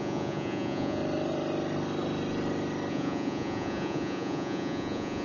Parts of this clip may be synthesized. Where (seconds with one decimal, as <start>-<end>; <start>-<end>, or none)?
0.0-1.0; 2.9-5.2